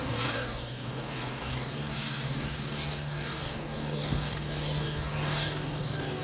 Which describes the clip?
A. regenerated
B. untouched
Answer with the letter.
A